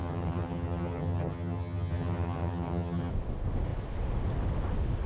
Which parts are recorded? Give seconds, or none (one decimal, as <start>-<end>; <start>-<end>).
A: 3.1-5.1